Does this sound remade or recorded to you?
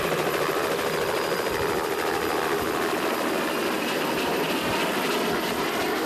remade